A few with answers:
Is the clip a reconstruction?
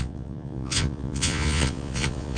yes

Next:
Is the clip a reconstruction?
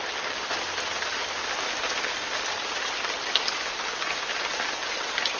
no